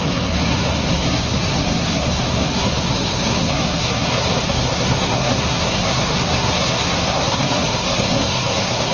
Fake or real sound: fake